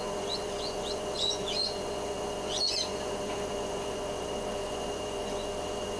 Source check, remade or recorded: remade